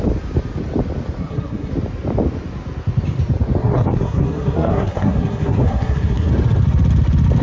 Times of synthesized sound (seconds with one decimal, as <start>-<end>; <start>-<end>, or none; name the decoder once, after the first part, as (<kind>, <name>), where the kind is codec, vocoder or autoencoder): 1.2-1.7 (codec, SNAC); 3.6-6.3